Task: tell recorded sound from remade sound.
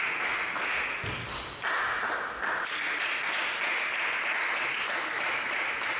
recorded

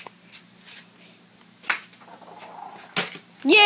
recorded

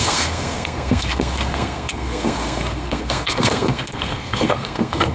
remade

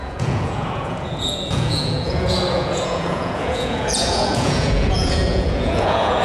remade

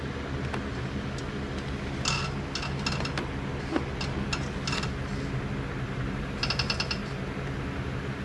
recorded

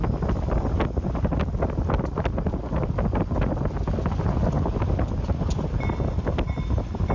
recorded